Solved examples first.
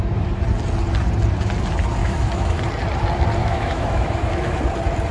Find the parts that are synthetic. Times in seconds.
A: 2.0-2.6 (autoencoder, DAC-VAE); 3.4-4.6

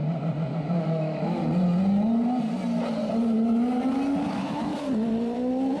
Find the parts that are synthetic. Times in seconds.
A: 0.8-1.4 (autoencoder, DAC-VAE); 4.3-4.7